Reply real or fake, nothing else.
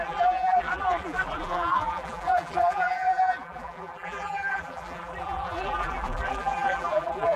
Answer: fake